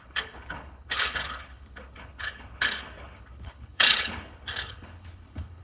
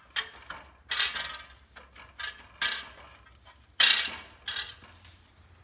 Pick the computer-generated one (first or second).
first